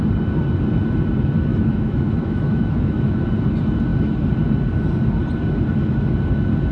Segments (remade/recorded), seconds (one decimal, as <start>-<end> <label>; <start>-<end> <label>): 0.0-1.5 recorded; 1.5-3.2 remade; 3.2-6.7 recorded

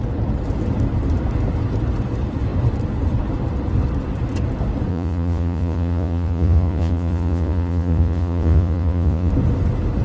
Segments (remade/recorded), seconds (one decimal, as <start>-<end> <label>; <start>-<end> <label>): 0.0-4.9 recorded; 4.9-9.3 remade; 9.3-10.0 recorded